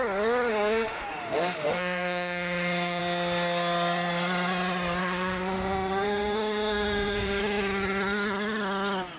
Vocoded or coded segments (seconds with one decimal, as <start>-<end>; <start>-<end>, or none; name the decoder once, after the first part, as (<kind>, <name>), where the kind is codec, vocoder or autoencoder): 0.5-3.0 (autoencoder, DAC-VAE); 5.0-7.4